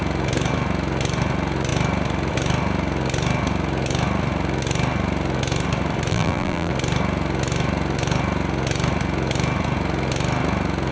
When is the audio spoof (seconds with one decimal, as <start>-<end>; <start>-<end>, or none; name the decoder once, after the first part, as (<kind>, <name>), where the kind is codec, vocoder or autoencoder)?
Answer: 6.1-6.7 (vocoder, BigVGAN v2)